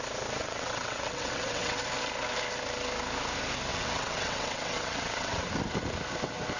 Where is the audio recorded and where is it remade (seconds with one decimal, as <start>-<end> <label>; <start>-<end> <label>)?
0.0-0.4 recorded; 0.4-1.8 remade; 1.8-3.7 recorded; 3.7-5.5 remade; 5.5-6.6 recorded